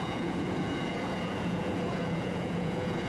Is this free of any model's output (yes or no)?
no